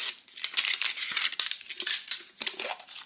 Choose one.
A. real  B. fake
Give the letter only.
A